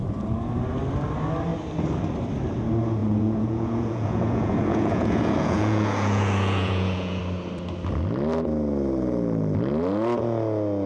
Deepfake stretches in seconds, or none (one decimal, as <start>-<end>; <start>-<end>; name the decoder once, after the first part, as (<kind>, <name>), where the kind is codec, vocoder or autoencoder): 3.0-7.2 (vocoder, Vocos)